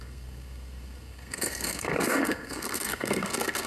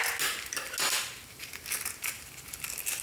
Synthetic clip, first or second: first